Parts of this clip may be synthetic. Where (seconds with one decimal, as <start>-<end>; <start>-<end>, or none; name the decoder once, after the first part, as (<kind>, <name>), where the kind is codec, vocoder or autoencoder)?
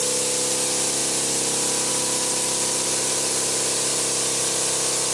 none